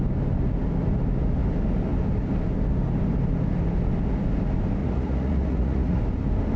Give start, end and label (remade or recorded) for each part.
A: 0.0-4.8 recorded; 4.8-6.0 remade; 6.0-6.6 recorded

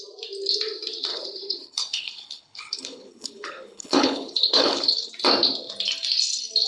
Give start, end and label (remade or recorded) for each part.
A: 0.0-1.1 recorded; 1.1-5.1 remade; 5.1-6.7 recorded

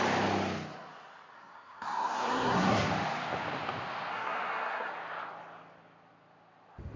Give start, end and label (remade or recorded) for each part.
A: 0.0-1.3 recorded; 1.3-2.9 remade; 2.9-4.1 recorded; 4.1-4.9 remade; 4.9-7.0 recorded

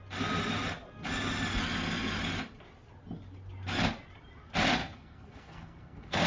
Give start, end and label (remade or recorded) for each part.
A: 0.0-4.8 recorded; 4.8-6.3 remade

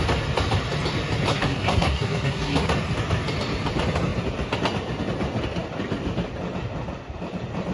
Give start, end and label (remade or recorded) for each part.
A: 0.0-1.3 recorded; 1.3-2.7 remade; 2.7-7.7 recorded

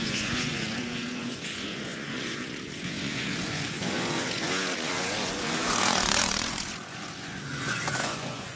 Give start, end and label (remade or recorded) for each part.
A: 0.0-8.6 remade

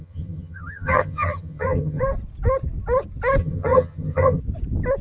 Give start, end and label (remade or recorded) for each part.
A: 0.0-2.0 remade; 2.0-3.4 recorded; 3.4-4.4 remade; 4.4-5.0 recorded